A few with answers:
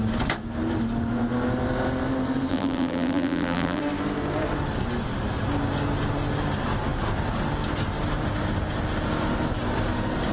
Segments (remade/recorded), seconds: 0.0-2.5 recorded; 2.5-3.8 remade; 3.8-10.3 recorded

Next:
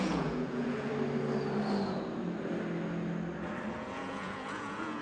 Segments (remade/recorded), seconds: 0.0-0.9 remade; 0.9-3.7 recorded; 3.7-5.0 remade

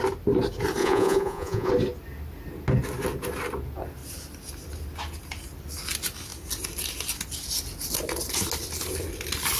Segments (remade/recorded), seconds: 0.0-0.8 recorded; 0.8-1.7 remade; 1.7-9.6 recorded

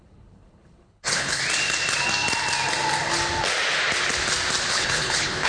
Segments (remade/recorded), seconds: 0.0-1.4 remade; 1.4-4.7 recorded; 4.7-5.5 remade

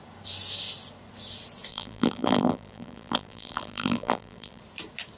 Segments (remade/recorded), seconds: 0.0-1.7 recorded; 1.7-4.6 remade; 4.6-5.2 recorded

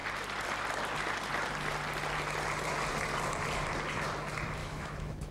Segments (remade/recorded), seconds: 0.0-4.6 recorded; 4.6-5.3 remade

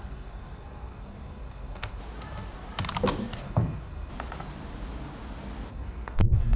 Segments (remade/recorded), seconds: 0.0-2.0 remade; 2.0-3.4 recorded; 3.4-4.1 remade; 4.1-5.7 recorded; 5.7-6.6 remade